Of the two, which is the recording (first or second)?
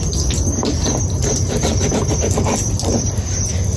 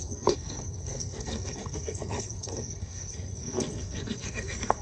first